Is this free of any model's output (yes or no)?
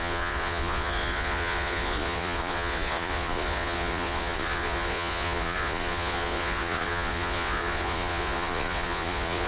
no